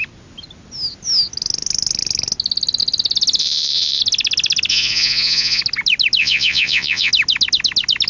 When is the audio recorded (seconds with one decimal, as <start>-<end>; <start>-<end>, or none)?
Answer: 0.0-3.4; 4.0-4.7; 5.6-6.2; 7.1-8.1